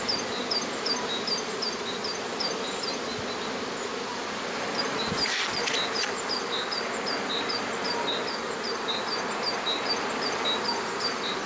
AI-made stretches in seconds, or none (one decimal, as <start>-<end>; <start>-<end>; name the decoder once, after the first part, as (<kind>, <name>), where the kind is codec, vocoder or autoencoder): none